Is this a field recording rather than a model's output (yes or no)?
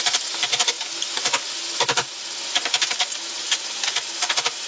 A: yes